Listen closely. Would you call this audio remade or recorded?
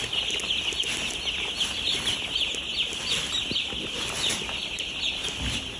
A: recorded